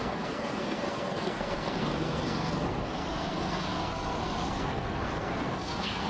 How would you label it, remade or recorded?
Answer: remade